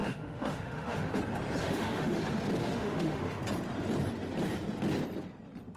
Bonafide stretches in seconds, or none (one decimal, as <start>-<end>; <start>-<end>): 1.2-1.6; 2.2-2.6; 3.4-5.8